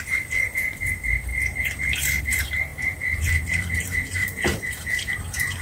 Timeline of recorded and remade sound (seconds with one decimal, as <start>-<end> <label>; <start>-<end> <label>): 0.0-1.3 remade; 1.3-2.2 recorded; 2.2-5.6 remade